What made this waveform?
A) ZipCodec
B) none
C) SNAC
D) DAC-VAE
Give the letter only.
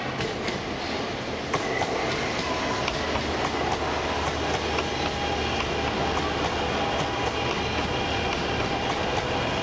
B